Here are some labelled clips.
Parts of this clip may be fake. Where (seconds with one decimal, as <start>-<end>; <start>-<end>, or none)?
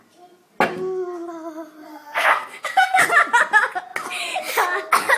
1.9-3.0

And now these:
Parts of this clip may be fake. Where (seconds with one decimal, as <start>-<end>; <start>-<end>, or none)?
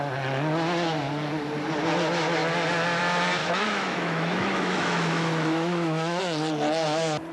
3.4-6.2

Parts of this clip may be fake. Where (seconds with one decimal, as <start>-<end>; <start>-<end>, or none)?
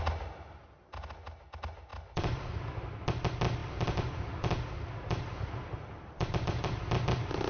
1.9-2.6; 3.6-6.8